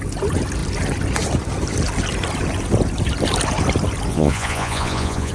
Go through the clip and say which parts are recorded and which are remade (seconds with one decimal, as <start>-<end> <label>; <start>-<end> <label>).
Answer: 0.0-4.1 recorded; 4.1-5.3 remade